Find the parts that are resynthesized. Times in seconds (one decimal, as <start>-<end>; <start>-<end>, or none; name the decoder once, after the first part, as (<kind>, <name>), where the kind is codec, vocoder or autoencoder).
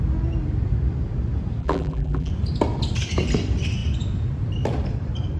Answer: 1.6-2.3 (vocoder, BigVGAN v2)